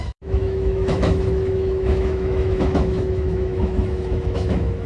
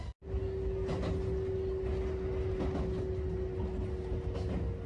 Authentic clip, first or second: second